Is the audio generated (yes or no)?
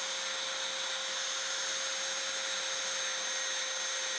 no